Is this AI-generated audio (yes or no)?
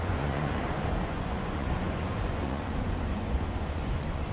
yes